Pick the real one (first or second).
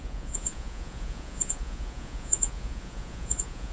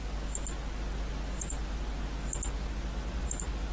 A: second